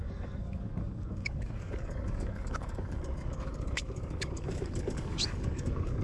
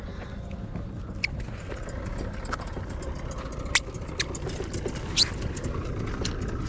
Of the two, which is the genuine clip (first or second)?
second